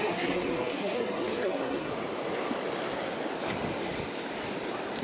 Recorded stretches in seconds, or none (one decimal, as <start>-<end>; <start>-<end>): 1.9-5.0